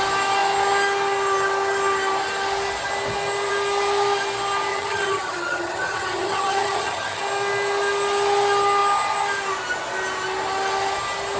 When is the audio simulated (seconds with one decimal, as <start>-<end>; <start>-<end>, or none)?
4.7-7.2